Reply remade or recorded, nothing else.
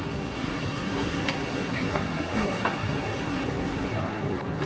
remade